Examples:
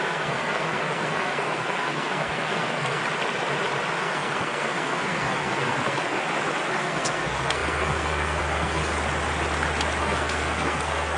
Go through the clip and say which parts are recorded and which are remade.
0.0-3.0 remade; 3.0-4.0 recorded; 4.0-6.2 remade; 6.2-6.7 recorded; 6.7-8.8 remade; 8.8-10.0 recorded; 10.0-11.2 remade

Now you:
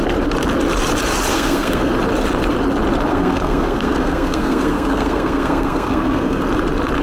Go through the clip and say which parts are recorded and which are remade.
0.0-1.3 recorded; 1.3-1.9 remade; 1.9-3.1 recorded; 3.1-6.4 remade; 6.4-7.0 recorded

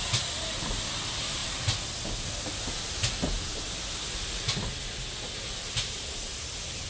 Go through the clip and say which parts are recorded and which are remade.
0.0-6.9 recorded